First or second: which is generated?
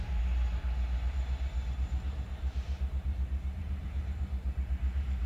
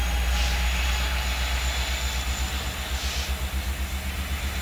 first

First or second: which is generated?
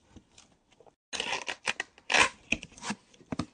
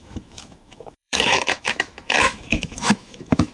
second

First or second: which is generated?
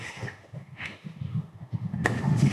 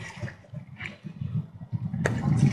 first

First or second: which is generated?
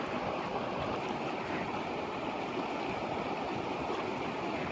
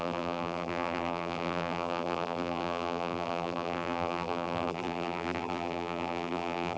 second